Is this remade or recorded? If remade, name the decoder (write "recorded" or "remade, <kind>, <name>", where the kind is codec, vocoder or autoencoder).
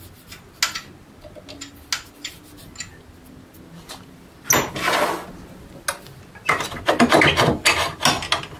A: recorded